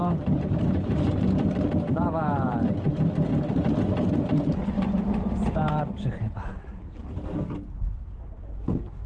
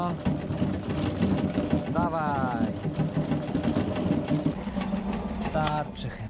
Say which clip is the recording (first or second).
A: second